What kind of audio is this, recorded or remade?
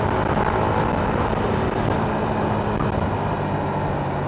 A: recorded